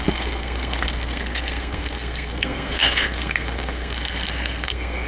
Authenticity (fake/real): fake